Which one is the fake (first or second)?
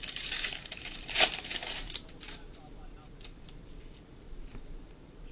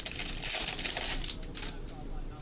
first